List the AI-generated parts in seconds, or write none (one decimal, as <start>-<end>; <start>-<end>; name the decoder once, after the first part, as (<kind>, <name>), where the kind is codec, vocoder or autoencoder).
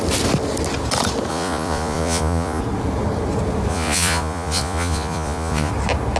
1.3-2.6 (vocoder, Vocos); 3.7-5.7